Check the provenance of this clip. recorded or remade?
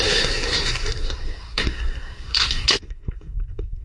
remade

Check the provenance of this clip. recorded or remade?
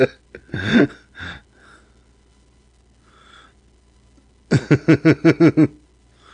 recorded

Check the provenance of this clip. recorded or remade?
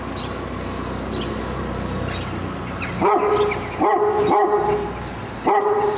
recorded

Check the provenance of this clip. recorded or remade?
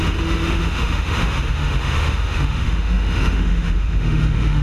remade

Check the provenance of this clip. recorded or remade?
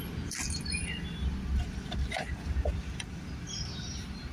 remade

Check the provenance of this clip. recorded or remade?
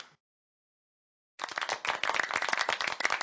recorded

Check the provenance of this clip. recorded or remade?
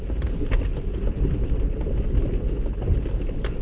recorded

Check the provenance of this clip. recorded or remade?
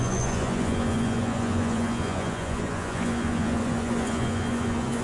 remade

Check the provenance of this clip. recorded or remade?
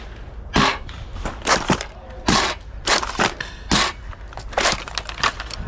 recorded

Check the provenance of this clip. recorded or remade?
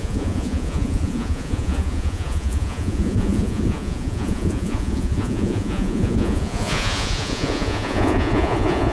remade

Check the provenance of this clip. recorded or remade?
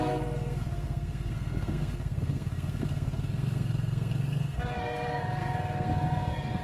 remade